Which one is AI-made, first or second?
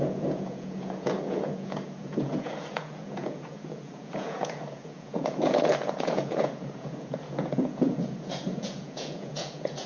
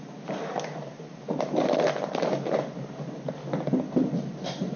first